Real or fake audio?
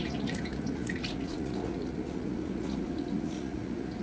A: fake